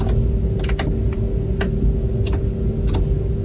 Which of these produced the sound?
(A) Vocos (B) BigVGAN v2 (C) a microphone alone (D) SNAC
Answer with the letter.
C